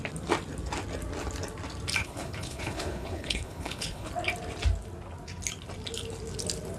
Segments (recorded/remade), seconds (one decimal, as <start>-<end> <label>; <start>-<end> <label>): 0.0-2.0 recorded; 2.0-4.1 remade; 4.1-6.8 recorded